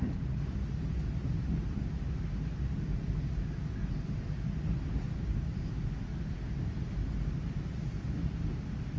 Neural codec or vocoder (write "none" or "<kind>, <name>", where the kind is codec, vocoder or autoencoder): none